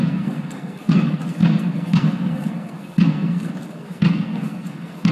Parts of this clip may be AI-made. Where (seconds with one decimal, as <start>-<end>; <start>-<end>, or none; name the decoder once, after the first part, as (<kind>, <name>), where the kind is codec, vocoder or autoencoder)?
0.0-5.1 (codec, SNAC)